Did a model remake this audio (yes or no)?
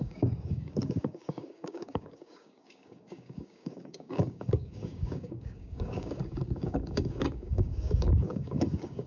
yes